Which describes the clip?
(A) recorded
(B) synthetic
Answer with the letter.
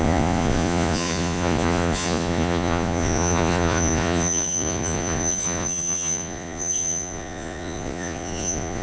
B